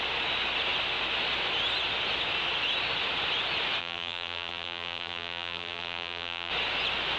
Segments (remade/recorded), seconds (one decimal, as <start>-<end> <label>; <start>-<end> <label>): 0.0-3.8 recorded; 3.8-6.5 remade; 6.5-7.2 recorded